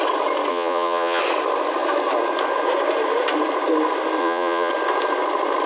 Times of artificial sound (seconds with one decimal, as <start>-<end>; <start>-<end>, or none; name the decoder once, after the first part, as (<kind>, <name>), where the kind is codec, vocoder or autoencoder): 0.5-1.2 (vocoder, Vocos); 4.2-4.7